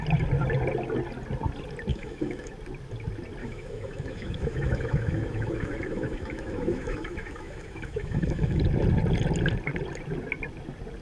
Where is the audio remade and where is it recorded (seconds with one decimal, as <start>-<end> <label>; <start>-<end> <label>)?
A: 0.0-1.9 recorded; 1.9-2.5 remade; 2.5-3.4 recorded; 3.4-8.6 remade; 8.6-11.0 recorded